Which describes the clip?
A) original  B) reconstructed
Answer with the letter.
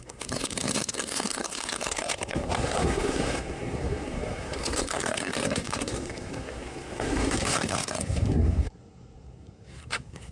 B